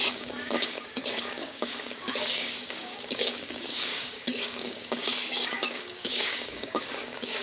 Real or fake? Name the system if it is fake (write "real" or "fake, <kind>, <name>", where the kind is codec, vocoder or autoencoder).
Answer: fake, codec, DAC